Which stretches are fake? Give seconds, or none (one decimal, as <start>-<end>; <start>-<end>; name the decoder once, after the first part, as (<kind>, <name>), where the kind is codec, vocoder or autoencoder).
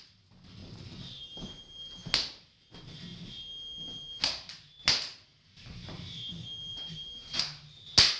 0.6-1.2 (vocoder, BigVGAN v2); 5.3-6.3; 6.7-7.4